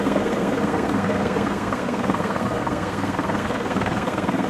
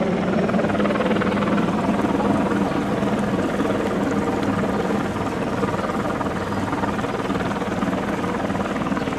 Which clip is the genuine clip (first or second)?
second